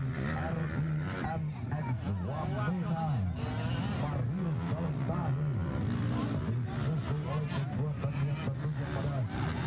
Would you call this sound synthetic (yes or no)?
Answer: no